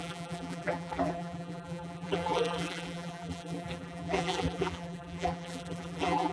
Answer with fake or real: fake